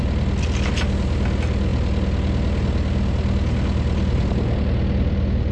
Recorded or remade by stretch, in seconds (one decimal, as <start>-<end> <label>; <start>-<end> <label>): 0.0-5.5 recorded